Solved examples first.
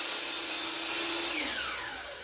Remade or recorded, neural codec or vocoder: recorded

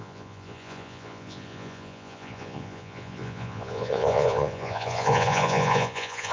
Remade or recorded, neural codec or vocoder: remade, vocoder, Vocos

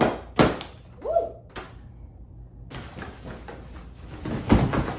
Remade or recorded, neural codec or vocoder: recorded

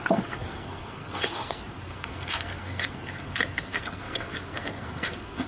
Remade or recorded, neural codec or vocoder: remade, codec, SNAC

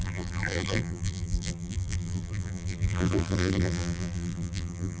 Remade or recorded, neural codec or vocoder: remade, vocoder, BigVGAN v2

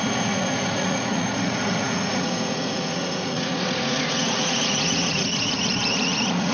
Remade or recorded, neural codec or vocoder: remade, vocoder, Vocos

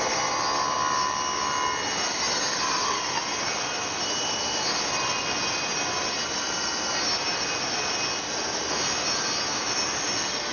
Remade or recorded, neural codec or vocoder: recorded